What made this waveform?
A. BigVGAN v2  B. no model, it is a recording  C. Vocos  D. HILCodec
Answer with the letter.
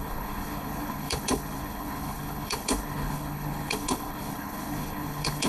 D